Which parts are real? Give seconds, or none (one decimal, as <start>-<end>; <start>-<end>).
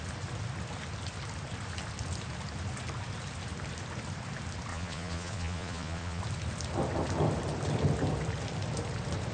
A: 0.0-4.7; 6.2-9.3